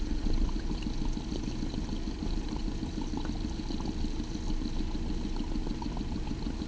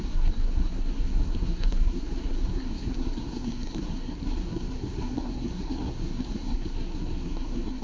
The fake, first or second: second